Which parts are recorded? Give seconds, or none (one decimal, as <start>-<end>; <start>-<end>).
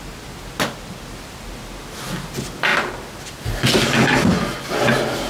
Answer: 0.0-5.3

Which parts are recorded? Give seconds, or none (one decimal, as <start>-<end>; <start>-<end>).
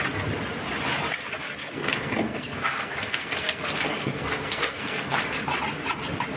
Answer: 0.0-1.6; 5.4-6.4